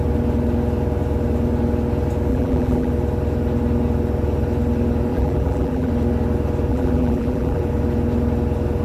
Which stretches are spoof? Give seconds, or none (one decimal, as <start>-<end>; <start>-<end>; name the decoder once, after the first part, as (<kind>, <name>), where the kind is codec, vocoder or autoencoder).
2.3-2.9 (vocoder, BigVGAN v2); 5.1-5.9; 6.7-7.6